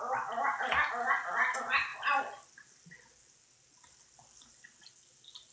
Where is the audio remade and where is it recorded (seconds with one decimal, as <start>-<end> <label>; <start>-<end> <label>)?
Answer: 0.0-5.5 recorded